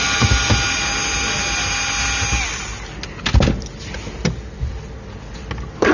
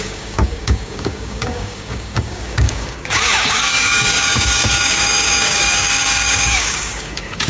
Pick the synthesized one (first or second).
second